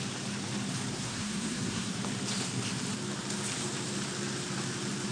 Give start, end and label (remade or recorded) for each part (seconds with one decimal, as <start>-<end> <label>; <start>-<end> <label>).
0.0-0.9 recorded; 0.9-2.0 remade; 2.0-5.1 recorded